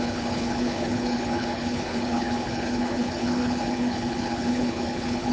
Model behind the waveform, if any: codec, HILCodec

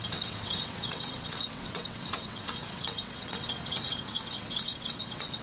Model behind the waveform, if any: vocoder, WaveNeXt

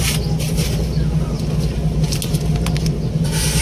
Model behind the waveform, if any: none